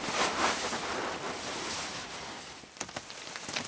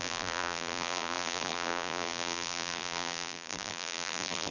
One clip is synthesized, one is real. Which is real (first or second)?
first